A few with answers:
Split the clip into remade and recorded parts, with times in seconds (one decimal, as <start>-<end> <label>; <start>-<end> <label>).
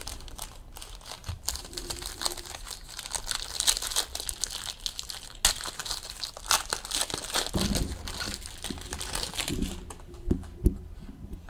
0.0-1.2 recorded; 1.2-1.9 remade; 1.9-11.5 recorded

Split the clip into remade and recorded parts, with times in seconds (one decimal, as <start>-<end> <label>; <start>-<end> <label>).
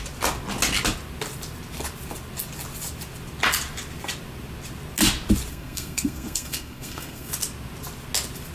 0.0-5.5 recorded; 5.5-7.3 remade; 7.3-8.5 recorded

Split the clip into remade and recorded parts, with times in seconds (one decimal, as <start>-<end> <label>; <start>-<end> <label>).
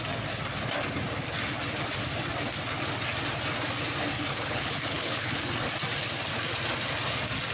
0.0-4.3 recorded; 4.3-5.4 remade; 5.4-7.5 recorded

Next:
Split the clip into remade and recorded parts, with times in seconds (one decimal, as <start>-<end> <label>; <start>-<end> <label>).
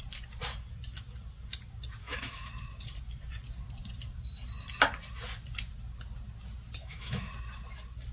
0.0-2.0 recorded; 2.0-2.5 remade; 2.5-6.8 recorded; 6.8-7.3 remade; 7.3-8.1 recorded